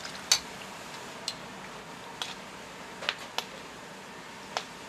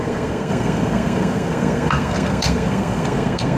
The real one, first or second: first